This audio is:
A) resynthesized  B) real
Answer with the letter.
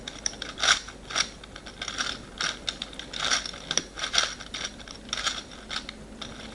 B